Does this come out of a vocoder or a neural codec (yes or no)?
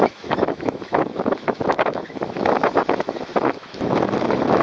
yes